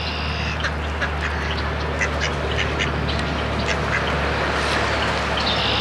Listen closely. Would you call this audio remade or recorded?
recorded